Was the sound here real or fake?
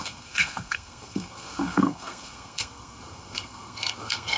fake